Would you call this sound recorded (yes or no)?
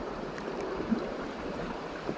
no